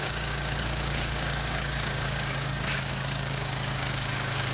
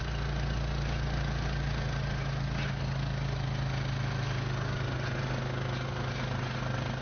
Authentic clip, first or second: second